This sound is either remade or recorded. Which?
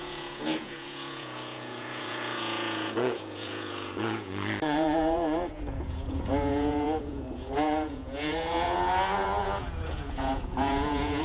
remade